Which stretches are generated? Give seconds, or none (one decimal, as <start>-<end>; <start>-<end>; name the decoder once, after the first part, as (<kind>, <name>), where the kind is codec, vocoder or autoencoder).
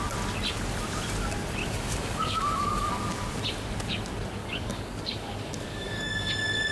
1.6-3.0 (codec, DAC); 4.4-6.3